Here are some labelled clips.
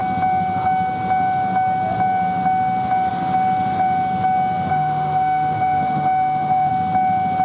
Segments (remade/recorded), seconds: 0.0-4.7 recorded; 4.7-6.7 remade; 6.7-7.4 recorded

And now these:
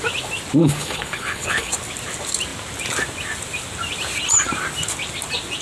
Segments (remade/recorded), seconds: 0.0-0.6 recorded; 0.6-1.7 remade; 1.7-5.6 recorded

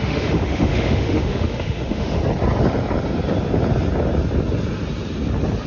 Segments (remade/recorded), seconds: 0.0-2.2 remade; 2.2-5.7 recorded